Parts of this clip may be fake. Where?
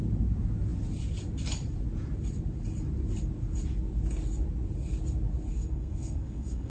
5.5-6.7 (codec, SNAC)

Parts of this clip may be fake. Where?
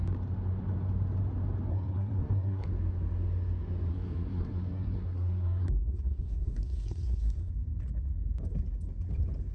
1.7-2.7 (codec, SNAC); 3.9-7.5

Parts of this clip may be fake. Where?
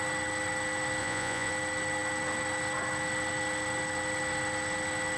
1.0-1.5 (vocoder, Vocos)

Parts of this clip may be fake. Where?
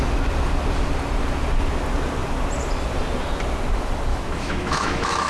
4.1-5.3 (autoencoder, DAC-VAE)